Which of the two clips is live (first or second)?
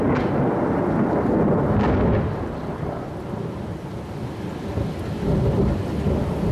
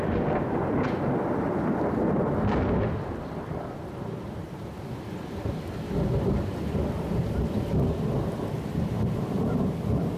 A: first